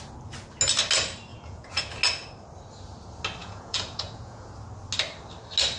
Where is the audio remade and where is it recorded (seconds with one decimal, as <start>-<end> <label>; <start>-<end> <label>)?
0.0-1.3 recorded; 1.3-1.9 remade; 1.9-3.4 recorded; 3.4-4.5 remade; 4.5-5.8 recorded

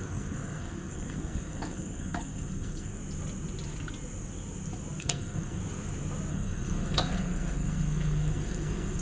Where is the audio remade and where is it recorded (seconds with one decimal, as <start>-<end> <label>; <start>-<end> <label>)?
0.0-3.0 remade; 3.0-5.0 recorded; 5.0-5.6 remade; 5.6-6.3 recorded; 6.3-9.0 remade